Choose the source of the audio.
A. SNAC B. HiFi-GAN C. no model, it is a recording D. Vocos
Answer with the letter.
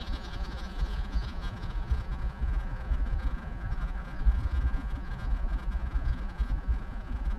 D